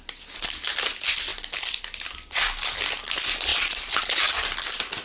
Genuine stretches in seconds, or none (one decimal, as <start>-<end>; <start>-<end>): 0.0-5.0